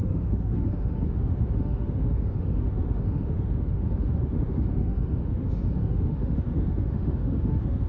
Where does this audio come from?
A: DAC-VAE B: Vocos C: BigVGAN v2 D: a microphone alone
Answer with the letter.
A